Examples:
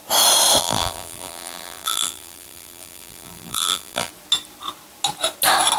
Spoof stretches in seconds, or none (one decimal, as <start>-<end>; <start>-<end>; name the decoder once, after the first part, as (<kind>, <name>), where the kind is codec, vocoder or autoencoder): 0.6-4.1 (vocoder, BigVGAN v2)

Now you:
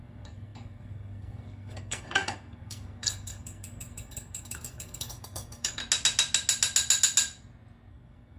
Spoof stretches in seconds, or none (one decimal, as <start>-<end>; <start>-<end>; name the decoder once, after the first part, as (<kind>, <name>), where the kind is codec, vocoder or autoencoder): 0.0-5.8 (codec, SNAC); 7.9-8.4

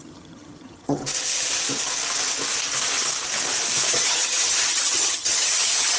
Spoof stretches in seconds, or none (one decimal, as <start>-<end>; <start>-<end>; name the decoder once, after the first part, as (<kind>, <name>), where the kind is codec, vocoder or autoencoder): 0.0-1.0 (vocoder, HiFi-GAN); 3.9-6.0

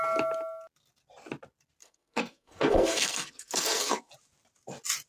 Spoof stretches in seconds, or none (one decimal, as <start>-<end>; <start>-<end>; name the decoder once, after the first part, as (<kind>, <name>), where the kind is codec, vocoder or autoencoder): 1.8-4.1 (codec, SNAC)

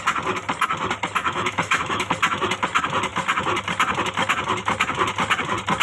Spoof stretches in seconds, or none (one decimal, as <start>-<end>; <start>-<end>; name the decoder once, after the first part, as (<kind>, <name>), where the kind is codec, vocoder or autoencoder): 1.2-2.1 (autoencoder, DAC-VAE)

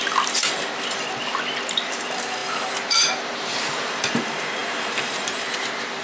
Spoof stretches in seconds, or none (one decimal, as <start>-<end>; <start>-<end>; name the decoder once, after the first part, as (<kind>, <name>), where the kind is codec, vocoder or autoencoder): 1.6-6.0 (vocoder, BigVGAN v2)